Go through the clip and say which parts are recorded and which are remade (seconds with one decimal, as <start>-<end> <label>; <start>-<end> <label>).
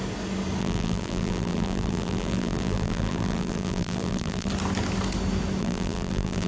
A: 0.0-0.6 recorded; 0.6-4.5 remade; 4.5-5.6 recorded; 5.6-6.5 remade